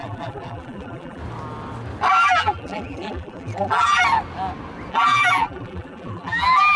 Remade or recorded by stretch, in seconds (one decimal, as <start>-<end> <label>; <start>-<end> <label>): 0.0-1.2 remade; 1.2-2.2 recorded; 2.2-4.0 remade; 4.0-4.9 recorded; 4.9-6.8 remade